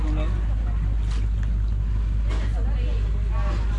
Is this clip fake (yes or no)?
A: no